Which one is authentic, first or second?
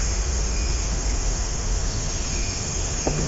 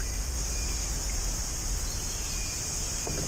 second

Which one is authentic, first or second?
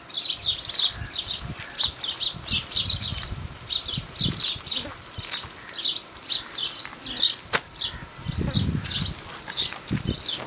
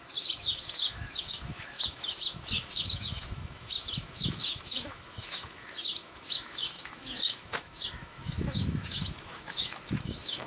first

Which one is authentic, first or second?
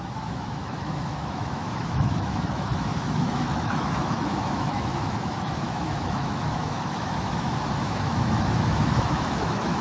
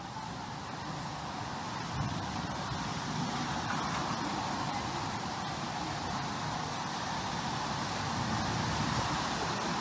second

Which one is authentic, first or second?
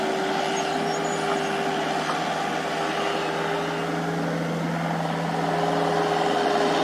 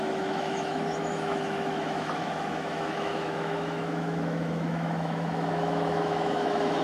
first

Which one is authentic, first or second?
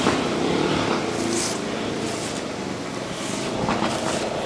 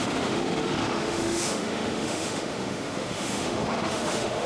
first